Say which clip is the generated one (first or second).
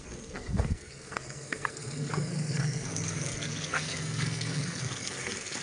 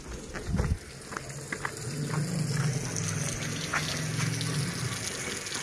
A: first